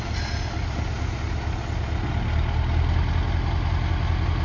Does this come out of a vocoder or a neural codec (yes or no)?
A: no